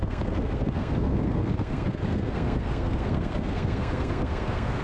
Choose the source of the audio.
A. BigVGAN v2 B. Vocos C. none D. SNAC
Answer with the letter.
D